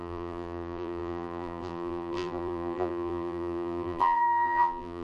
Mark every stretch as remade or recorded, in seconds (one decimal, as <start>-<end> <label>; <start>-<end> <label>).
0.0-5.0 remade

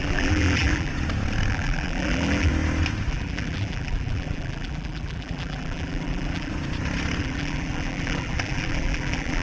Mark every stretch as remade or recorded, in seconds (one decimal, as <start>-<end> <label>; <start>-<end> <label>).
0.0-0.9 remade; 0.9-1.5 recorded; 1.5-2.5 remade; 2.5-3.1 recorded; 3.1-6.5 remade; 6.5-7.2 recorded; 7.2-9.4 remade

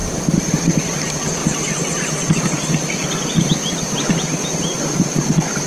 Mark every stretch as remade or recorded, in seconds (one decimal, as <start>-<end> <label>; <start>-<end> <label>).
0.0-0.5 recorded; 0.5-1.4 remade; 1.4-3.7 recorded; 3.7-5.7 remade

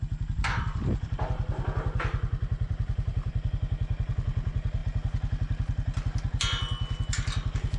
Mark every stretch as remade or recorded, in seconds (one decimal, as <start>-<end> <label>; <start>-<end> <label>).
0.0-0.4 recorded; 0.4-3.5 remade; 3.5-7.8 recorded